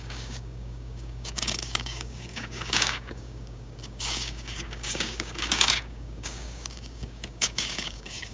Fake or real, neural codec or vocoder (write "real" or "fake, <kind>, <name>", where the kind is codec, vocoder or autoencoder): fake, codec, DAC